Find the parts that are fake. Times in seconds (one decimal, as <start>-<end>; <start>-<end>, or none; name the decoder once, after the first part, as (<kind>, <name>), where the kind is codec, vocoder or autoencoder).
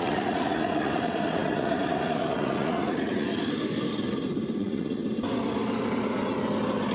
0.0-3.3 (vocoder, Vocos); 4.6-5.0